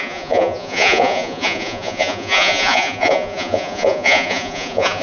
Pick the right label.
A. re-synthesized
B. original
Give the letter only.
A